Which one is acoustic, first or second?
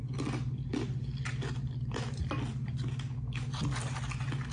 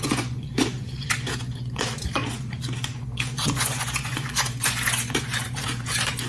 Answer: first